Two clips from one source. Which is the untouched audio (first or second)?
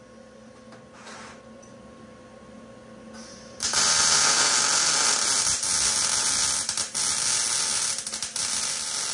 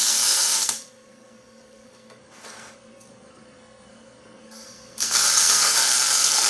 first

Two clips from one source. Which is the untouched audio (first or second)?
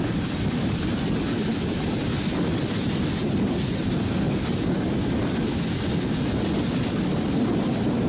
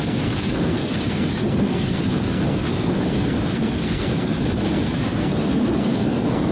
first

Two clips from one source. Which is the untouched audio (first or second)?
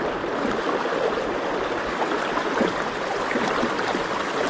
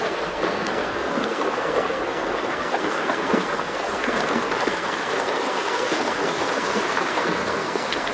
first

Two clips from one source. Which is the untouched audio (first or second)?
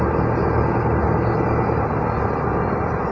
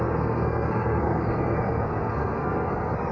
first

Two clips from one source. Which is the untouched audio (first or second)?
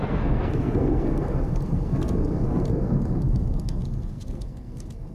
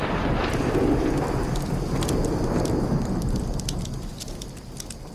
second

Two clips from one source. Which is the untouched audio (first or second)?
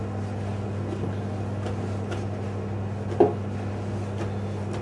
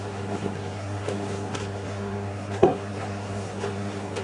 first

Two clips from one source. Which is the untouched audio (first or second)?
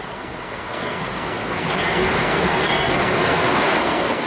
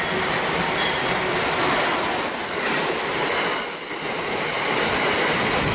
second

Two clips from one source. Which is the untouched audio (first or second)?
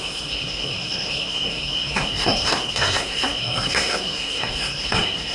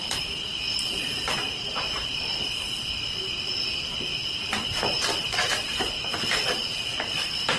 second